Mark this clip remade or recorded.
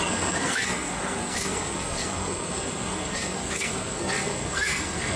remade